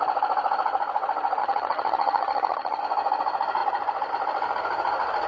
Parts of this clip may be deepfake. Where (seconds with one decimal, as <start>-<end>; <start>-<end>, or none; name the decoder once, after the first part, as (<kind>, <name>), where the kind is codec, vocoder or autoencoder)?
1.4-2.8 (vocoder, HiFi-GAN)